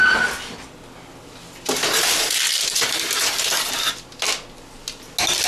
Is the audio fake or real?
real